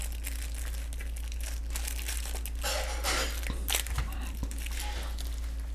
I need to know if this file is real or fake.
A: real